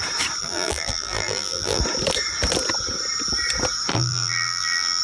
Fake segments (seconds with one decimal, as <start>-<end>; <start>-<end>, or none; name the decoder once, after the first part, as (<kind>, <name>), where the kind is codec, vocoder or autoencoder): 0.4-1.8 (vocoder, BigVGAN v2); 3.9-5.0